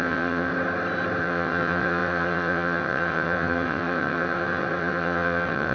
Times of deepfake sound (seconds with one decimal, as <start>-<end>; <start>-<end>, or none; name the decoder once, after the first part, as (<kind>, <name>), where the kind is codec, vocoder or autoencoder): 0.0-0.5 (vocoder, WaveNeXt); 1.2-5.7